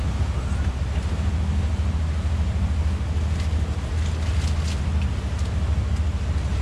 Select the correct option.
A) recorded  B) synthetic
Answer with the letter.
A